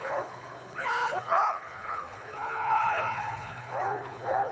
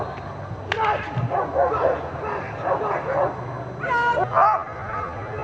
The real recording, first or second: second